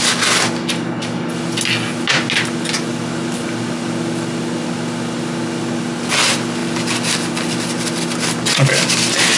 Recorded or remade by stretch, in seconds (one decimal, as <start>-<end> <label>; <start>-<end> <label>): 0.0-9.4 recorded